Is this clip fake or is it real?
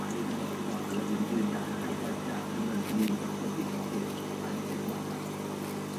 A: real